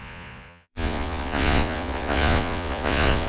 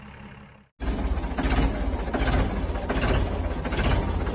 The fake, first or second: first